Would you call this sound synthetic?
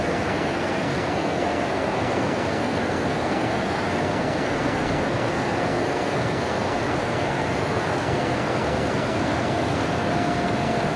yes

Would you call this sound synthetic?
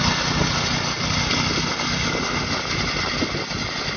no